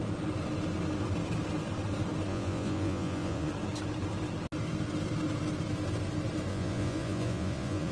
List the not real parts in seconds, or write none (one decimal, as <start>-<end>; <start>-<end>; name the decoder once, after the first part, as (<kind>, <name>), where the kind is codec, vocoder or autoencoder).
2.3-3.5 (vocoder, Vocos); 6.5-7.9

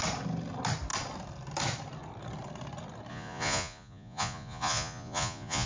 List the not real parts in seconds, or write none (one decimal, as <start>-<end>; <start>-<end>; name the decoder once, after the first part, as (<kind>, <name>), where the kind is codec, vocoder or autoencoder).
3.1-5.7 (vocoder, Vocos)

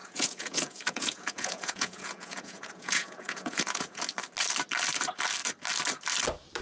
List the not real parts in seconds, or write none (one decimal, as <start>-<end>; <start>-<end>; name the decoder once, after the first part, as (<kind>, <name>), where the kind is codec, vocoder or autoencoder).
0.0-4.0 (vocoder, Vocos)

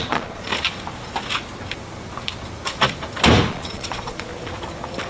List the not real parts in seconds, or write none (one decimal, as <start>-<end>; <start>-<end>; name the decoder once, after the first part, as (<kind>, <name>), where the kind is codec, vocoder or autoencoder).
0.0-0.5 (vocoder, Vocos); 3.5-4.3